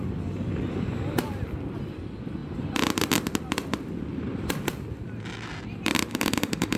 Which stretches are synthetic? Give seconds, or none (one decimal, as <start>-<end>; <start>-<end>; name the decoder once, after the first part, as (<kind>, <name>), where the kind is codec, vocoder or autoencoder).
6.1-6.8 (autoencoder, DAC-VAE)